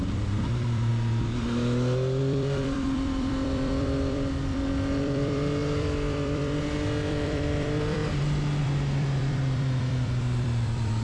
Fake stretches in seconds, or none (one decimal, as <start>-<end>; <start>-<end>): 0.0-0.9; 2.2-8.0; 8.6-11.0